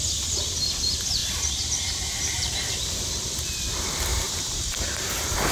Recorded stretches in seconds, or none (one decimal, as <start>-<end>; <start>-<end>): 0.0-1.2; 2.7-4.1; 5.1-5.5